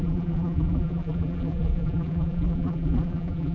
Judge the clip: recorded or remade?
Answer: remade